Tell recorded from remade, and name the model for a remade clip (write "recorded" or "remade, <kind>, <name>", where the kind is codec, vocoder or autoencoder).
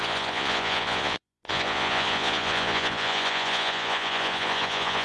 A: remade, vocoder, Vocos